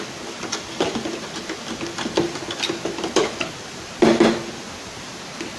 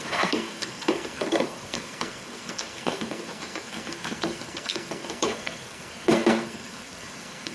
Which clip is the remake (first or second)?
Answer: second